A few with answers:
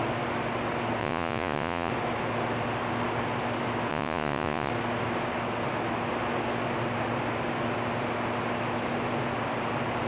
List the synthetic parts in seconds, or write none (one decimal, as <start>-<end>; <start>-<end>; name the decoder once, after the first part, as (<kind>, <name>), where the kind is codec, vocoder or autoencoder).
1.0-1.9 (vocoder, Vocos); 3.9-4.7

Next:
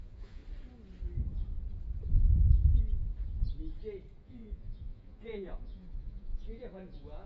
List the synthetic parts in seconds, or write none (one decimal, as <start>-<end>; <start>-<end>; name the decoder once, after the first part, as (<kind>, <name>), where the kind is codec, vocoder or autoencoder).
0.0-0.4 (vocoder, Vocos); 4.2-7.3

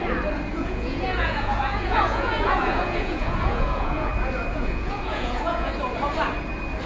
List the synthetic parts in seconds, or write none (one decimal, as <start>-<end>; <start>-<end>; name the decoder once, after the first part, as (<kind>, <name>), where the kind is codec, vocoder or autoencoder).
0.5-4.1 (vocoder, Vocos); 4.5-5.7

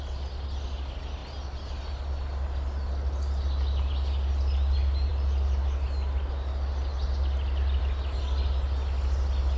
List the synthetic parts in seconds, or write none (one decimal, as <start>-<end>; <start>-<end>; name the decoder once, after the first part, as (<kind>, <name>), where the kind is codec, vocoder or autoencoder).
none

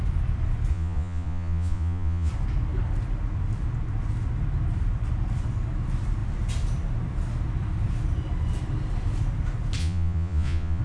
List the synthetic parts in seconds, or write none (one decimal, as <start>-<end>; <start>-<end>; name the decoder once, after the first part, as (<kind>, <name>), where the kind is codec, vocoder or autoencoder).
0.7-2.3 (vocoder, Vocos); 9.8-10.8

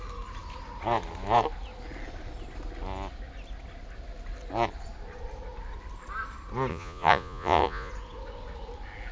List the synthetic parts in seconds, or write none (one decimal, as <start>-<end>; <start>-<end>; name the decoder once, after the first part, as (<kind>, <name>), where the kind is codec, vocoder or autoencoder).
6.7-7.9 (vocoder, Vocos)

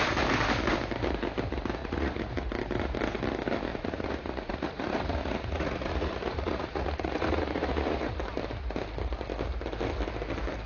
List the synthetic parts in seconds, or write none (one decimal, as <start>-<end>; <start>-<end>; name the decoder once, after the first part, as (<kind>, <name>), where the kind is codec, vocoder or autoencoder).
1.8-2.3 (vocoder, Vocos); 3.7-8.1